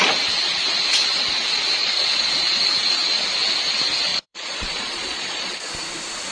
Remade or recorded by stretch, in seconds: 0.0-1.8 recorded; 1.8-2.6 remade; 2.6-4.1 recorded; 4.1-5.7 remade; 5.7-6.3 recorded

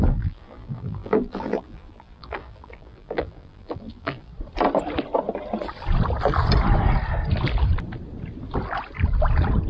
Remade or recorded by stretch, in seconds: 0.0-4.3 remade; 4.3-9.7 recorded

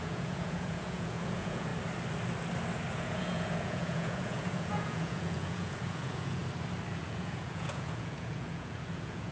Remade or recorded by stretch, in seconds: 0.0-1.7 remade; 1.7-2.9 recorded; 2.9-6.4 remade; 6.4-6.9 recorded; 6.9-9.3 remade

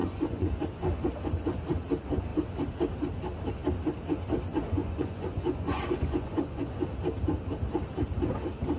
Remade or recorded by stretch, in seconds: 0.0-0.5 remade; 0.5-4.5 recorded; 4.5-6.8 remade; 6.8-8.8 recorded